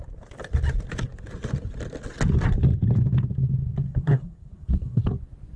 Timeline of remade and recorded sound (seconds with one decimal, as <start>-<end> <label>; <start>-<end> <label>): 0.0-3.9 recorded; 3.9-5.0 remade; 5.0-5.6 recorded

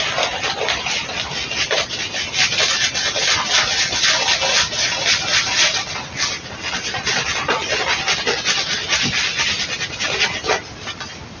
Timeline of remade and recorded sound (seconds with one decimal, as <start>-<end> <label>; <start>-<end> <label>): 0.0-11.4 recorded

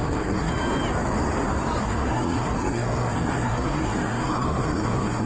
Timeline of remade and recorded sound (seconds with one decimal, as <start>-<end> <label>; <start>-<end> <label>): 0.0-0.5 remade; 0.5-1.8 recorded; 1.8-5.3 remade

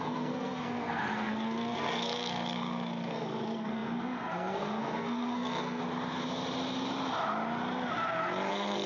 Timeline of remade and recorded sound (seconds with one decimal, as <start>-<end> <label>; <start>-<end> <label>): 0.0-5.8 remade; 5.8-8.5 recorded; 8.5-8.9 remade

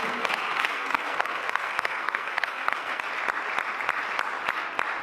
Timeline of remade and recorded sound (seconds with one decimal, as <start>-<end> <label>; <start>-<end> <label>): 0.0-3.0 remade; 3.0-5.0 recorded